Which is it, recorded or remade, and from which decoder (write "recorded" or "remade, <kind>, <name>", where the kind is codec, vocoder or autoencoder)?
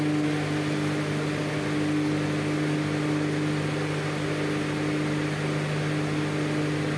recorded